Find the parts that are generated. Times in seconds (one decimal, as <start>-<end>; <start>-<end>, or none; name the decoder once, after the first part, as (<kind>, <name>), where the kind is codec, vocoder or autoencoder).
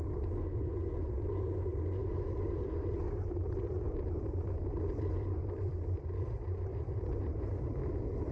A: 2.0-6.1 (vocoder, BigVGAN v2); 6.7-8.3